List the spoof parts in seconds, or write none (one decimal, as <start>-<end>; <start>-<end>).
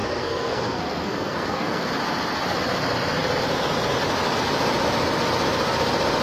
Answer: 0.0-1.9